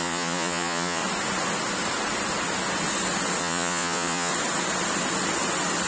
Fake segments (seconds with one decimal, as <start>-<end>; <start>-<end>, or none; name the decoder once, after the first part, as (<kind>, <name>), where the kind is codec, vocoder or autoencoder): 0.0-1.0 (vocoder, Vocos); 3.4-4.3